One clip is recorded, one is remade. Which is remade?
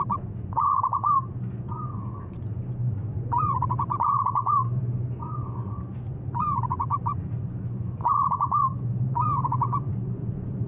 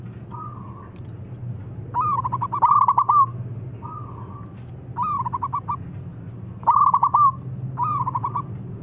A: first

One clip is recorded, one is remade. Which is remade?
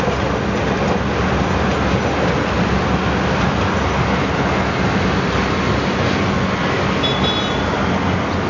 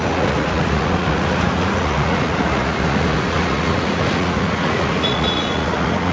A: second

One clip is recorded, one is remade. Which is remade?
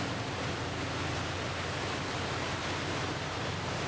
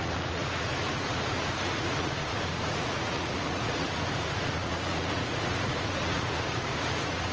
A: second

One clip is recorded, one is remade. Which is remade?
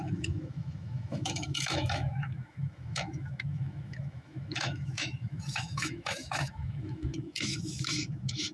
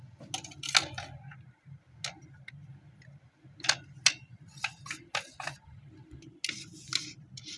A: first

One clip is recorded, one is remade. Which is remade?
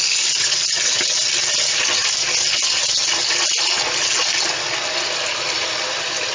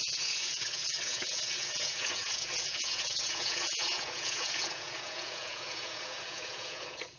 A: second